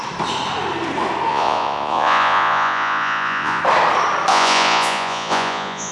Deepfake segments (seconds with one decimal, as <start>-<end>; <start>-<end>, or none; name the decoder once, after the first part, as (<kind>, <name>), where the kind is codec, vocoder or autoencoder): 1.3-3.6 (vocoder, Vocos); 4.3-5.9